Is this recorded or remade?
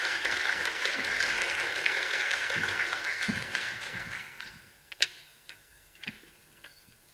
remade